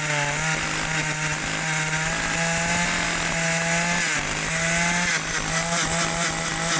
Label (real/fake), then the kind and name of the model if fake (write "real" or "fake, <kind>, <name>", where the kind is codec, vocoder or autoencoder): real